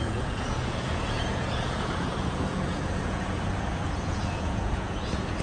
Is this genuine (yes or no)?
no